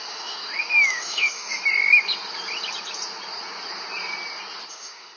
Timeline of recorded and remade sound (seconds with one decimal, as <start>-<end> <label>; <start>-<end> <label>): 0.0-1.6 remade; 1.6-4.7 recorded; 4.7-5.2 remade